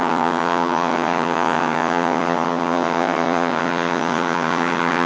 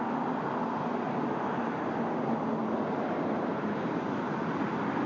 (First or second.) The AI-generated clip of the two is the first